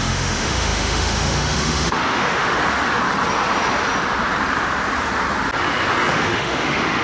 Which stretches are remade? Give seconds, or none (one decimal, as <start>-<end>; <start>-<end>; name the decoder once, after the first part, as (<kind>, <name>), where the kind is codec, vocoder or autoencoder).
0.0-2.6 (autoencoder, DAC-VAE); 6.1-7.0